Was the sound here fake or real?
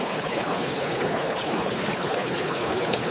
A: fake